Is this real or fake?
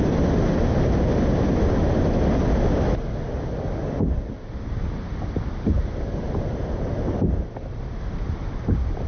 real